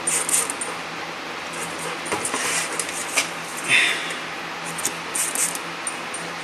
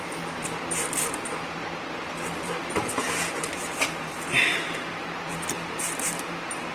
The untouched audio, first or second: first